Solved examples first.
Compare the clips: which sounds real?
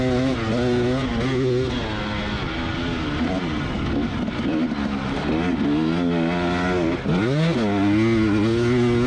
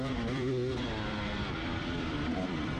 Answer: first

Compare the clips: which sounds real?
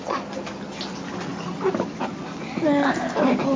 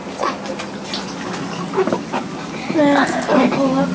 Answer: second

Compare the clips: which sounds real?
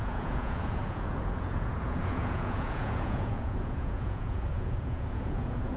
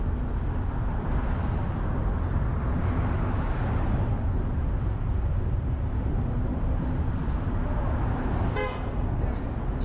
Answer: second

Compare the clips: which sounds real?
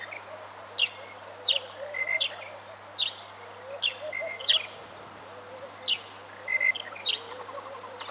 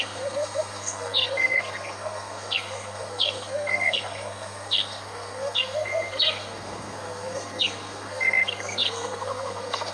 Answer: first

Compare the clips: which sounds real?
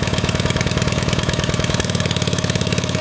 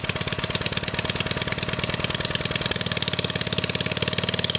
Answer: second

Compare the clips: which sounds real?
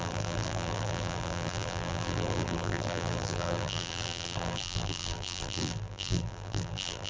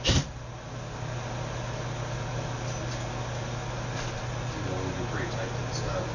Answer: second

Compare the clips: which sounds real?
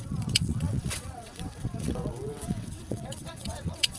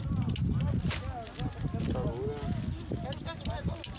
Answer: second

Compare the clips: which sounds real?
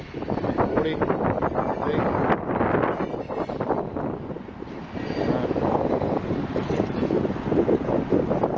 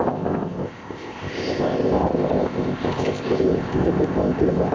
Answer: first